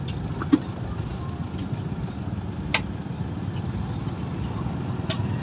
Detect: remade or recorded recorded